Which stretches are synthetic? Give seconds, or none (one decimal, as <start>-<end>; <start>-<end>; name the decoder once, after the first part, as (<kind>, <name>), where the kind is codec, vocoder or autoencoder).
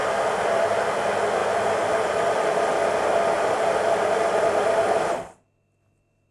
0.0-0.9 (vocoder, BigVGAN v2); 1.4-2.4